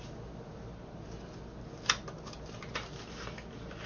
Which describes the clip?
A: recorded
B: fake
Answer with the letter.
A